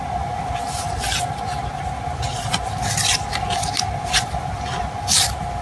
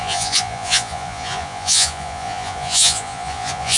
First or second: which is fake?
second